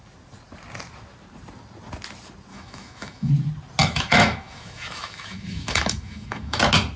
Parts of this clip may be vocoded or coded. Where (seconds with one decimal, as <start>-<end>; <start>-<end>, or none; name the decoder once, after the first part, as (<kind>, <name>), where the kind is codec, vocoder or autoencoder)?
2.5-3.3 (autoencoder, DAC-VAE); 3.8-6.6